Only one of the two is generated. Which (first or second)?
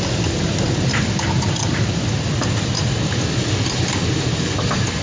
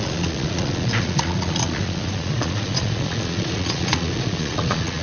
second